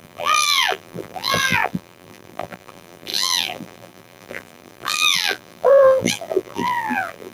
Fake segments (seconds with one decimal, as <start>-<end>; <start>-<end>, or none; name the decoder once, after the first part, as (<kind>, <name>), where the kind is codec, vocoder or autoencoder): 0.0-7.3 (vocoder, BigVGAN v2)